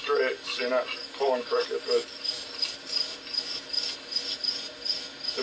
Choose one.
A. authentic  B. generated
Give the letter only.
A